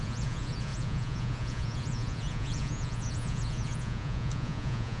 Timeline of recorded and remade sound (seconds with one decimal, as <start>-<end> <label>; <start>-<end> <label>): 0.0-5.0 remade